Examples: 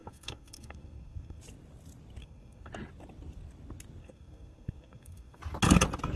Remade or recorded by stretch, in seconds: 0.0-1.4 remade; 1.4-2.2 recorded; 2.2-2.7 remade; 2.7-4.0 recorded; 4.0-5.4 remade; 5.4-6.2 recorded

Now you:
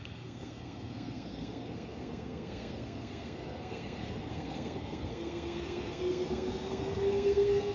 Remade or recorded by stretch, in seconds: 0.0-7.7 remade

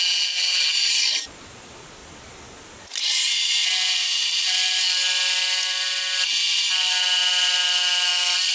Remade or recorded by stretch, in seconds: 0.0-8.5 recorded

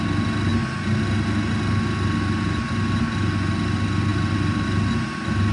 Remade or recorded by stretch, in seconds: 0.0-5.5 recorded

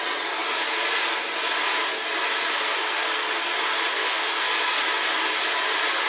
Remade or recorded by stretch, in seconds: 0.0-2.5 recorded; 2.5-3.5 remade; 3.5-3.9 recorded; 3.9-4.8 remade; 4.8-6.1 recorded

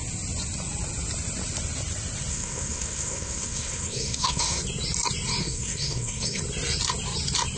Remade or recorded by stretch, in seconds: 0.0-2.3 recorded; 2.3-4.6 remade; 4.6-5.4 recorded; 5.4-6.4 remade; 6.4-7.6 recorded

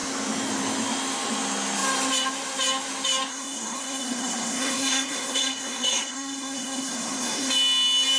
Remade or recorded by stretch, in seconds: 0.0-3.3 recorded; 3.3-7.5 remade; 7.5-8.2 recorded